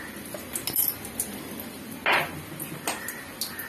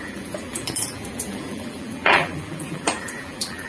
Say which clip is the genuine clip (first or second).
first